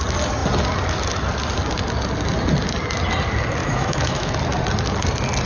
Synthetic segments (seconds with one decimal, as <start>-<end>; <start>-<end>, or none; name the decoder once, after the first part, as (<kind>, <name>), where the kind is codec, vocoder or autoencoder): 3.6-4.3 (autoencoder, DAC-VAE)